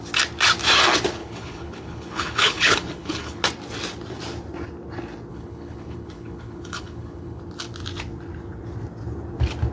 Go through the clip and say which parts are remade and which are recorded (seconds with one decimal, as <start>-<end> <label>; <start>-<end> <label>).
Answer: 0.0-1.2 recorded; 1.2-3.4 remade; 3.4-5.3 recorded; 5.3-7.4 remade; 7.4-9.7 recorded